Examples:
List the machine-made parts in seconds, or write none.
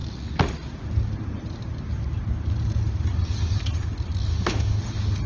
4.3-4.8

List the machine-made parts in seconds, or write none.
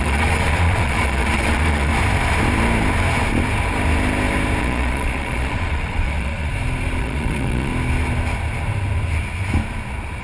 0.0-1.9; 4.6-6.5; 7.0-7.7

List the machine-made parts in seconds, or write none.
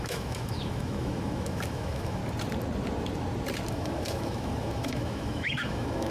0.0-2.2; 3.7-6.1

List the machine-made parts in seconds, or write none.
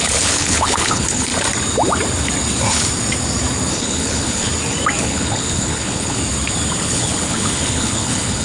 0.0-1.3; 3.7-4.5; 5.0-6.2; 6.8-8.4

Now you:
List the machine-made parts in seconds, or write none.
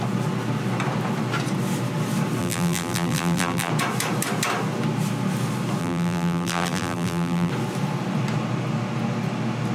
2.4-3.7; 5.8-7.5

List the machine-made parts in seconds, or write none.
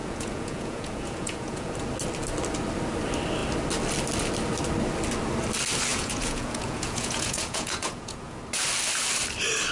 0.0-1.7; 5.9-8.4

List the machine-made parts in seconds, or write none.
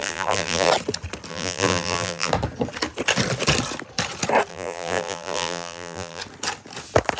0.0-0.7; 1.3-2.3; 4.5-6.2